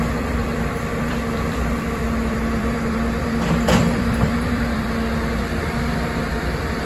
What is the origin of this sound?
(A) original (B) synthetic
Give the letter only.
B